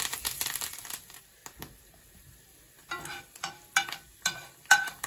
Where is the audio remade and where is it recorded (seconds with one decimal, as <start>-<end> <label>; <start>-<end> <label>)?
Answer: 0.0-2.8 recorded; 2.8-3.5 remade; 3.5-5.1 recorded